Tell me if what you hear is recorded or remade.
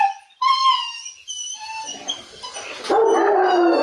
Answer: recorded